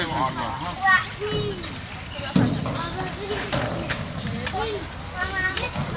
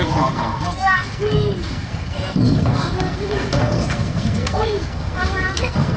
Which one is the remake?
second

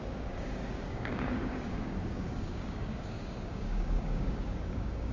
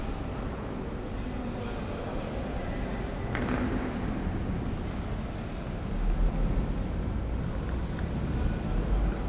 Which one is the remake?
first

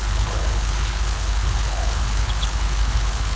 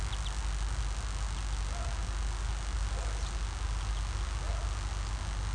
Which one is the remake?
first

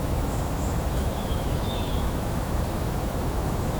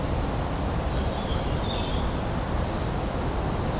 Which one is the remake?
first